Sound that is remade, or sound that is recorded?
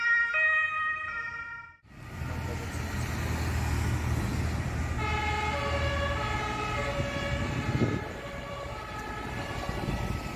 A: recorded